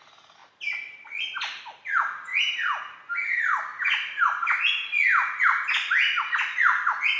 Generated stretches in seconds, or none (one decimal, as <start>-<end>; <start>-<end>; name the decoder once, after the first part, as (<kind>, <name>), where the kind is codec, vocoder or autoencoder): none